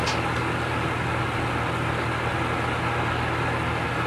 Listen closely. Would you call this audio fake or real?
real